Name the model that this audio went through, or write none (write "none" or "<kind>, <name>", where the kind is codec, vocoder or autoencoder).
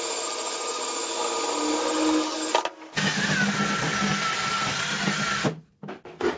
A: none